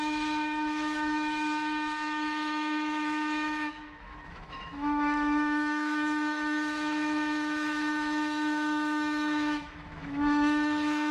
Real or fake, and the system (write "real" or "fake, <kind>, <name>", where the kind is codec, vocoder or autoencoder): fake, autoencoder, DAC-VAE